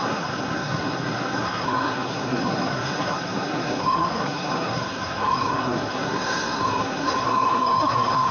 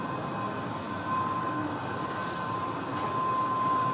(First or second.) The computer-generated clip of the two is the first